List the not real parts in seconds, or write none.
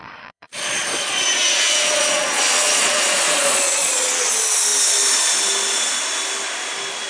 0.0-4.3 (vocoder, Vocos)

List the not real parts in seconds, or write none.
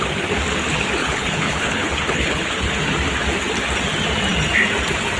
1.0-2.7 (codec, HILCodec)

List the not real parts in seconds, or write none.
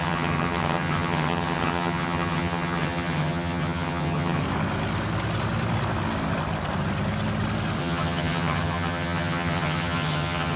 0.0-4.4 (vocoder, HiFi-GAN); 7.8-10.6